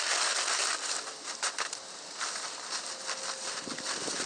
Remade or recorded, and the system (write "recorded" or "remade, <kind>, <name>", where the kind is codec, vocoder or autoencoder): recorded